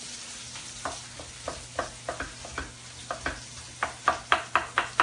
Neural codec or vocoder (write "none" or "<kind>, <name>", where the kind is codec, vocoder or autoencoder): none